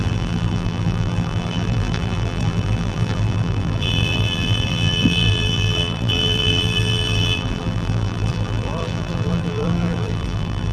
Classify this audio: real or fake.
fake